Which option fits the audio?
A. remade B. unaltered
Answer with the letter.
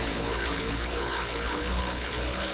A